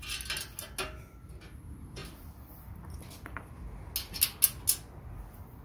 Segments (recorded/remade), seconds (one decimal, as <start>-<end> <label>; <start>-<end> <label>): 0.0-2.0 recorded; 2.0-3.5 remade; 3.5-5.6 recorded